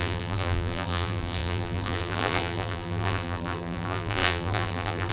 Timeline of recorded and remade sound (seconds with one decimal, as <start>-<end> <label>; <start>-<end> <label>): 0.0-5.1 remade